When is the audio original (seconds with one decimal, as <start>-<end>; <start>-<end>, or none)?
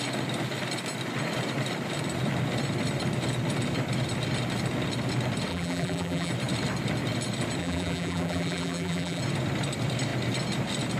0.0-5.5; 6.3-7.6; 9.2-11.0